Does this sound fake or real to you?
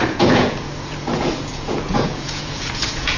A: fake